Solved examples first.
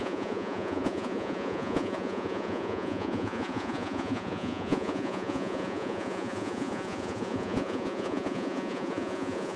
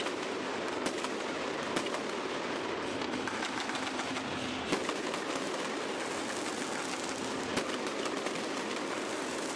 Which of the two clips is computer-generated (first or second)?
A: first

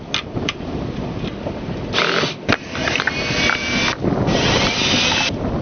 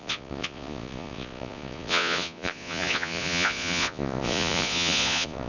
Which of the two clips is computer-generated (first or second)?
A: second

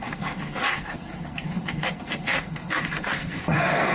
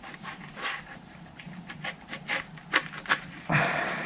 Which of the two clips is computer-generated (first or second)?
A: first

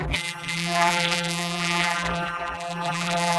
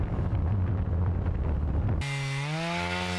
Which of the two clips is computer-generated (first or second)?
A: first